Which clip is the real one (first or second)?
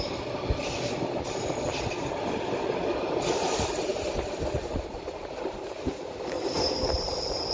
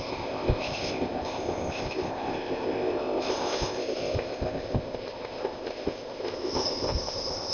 first